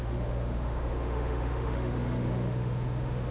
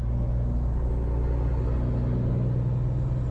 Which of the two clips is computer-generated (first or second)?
first